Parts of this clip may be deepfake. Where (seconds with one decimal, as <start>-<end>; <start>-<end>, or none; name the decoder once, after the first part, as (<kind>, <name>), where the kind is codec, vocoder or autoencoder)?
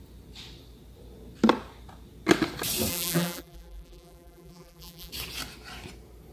2.9-5.1 (vocoder, BigVGAN v2)